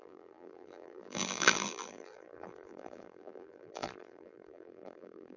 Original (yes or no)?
no